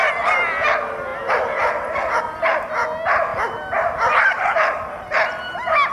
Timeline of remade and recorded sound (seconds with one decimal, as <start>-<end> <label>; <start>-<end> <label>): 0.0-5.9 recorded